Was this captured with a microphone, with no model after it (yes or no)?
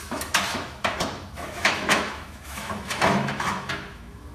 no